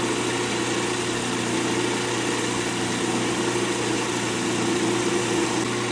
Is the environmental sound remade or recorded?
recorded